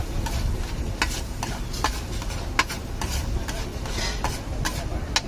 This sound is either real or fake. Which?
real